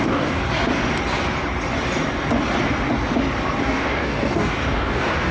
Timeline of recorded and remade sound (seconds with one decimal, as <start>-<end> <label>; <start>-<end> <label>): 0.0-0.4 remade; 0.4-3.6 recorded; 3.6-5.3 remade